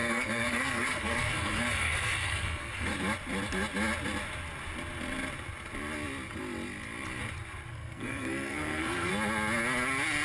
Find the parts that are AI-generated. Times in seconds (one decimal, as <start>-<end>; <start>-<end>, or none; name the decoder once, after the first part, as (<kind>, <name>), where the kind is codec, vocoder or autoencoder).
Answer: 0.0-2.9 (codec, SNAC); 7.7-9.1